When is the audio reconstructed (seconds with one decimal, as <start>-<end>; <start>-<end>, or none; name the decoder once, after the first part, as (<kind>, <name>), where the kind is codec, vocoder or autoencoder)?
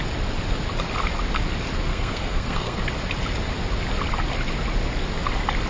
1.9-2.8 (codec, SNAC)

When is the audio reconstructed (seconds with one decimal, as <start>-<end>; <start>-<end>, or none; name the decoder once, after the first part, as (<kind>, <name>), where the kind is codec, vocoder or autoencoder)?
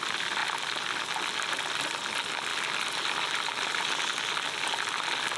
none